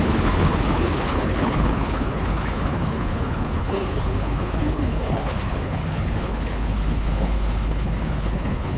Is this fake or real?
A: fake